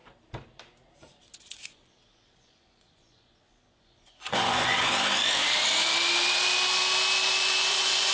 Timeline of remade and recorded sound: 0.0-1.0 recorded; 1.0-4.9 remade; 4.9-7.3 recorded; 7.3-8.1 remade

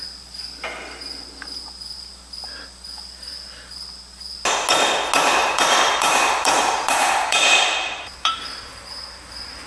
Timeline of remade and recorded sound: 0.0-5.4 recorded; 5.4-8.4 remade; 8.4-9.7 recorded

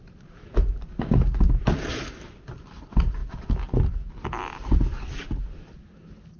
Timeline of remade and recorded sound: 0.0-6.4 recorded

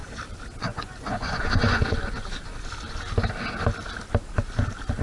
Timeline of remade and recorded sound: 0.0-0.6 recorded; 0.6-2.0 remade; 2.0-5.0 recorded

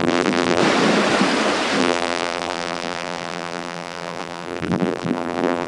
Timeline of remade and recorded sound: 0.0-0.6 remade; 0.6-1.8 recorded; 1.8-5.7 remade